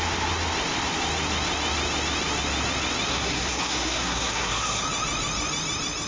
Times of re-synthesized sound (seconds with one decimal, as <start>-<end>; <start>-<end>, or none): 3.1-4.8